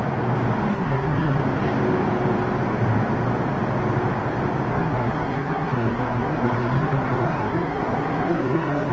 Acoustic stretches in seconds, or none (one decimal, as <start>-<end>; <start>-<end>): 0.0-0.7; 1.4-4.7